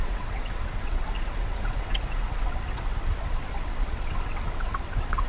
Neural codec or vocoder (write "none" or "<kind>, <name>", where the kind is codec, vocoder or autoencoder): vocoder, WaveNeXt